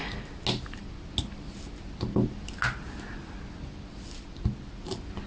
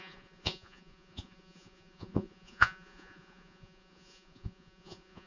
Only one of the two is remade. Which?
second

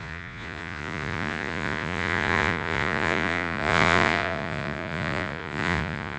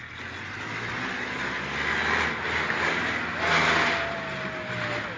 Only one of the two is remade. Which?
first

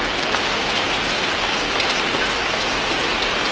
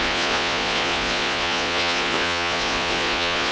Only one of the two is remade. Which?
second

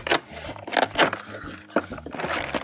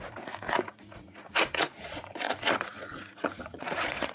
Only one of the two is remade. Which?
second